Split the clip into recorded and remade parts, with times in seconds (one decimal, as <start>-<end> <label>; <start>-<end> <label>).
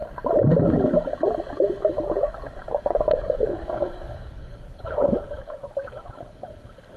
0.0-2.6 recorded; 2.6-6.5 remade; 6.5-7.0 recorded